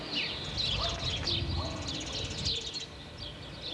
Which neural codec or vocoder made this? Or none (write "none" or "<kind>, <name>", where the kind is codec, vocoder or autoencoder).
none